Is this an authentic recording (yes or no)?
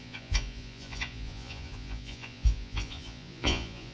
no